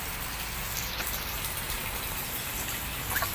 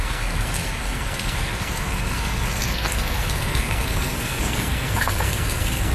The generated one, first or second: second